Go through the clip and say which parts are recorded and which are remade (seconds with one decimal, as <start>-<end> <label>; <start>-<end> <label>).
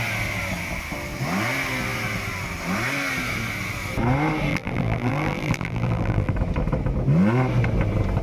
0.0-4.5 recorded; 4.5-6.3 remade; 6.3-8.2 recorded